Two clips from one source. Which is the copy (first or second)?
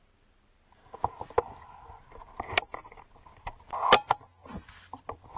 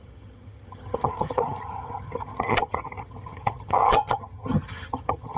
second